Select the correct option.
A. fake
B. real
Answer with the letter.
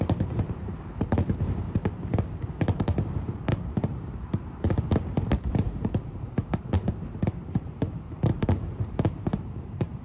A